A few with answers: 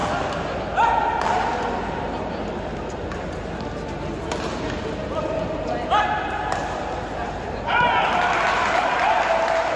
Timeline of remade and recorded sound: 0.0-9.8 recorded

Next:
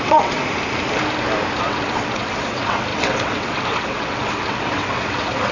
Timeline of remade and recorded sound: 0.0-0.4 remade; 0.4-1.6 recorded; 1.6-5.5 remade

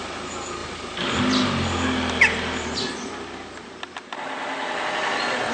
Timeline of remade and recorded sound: 0.0-5.5 recorded